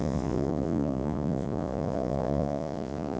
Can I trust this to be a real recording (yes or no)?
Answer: no